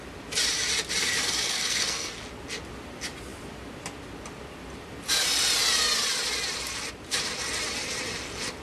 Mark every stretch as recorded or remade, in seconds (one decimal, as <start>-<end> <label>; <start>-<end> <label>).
0.0-1.0 recorded; 1.0-2.2 remade; 2.2-8.6 recorded